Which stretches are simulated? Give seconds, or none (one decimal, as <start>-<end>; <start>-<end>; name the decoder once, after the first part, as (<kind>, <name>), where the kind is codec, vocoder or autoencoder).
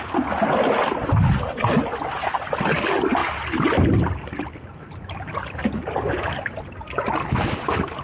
none